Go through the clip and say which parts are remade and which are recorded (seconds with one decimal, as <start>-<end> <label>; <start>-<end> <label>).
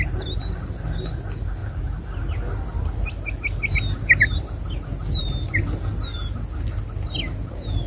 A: 0.0-7.9 recorded